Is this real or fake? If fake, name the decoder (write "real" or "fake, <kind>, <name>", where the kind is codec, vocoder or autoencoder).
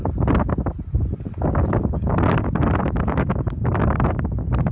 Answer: real